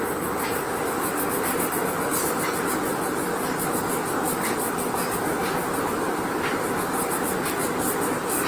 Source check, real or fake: real